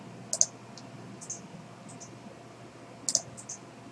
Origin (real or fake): real